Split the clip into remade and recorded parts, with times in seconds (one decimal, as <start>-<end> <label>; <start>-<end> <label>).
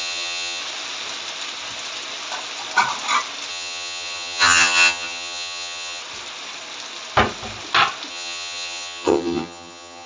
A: 0.0-0.6 remade; 0.6-3.5 recorded; 3.5-6.0 remade; 6.0-8.1 recorded; 8.1-10.1 remade